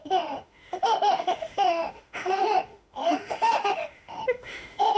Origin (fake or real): fake